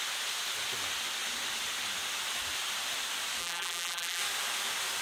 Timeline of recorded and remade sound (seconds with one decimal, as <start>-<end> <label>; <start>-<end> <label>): 0.0-3.4 recorded; 3.4-4.2 remade; 4.2-5.0 recorded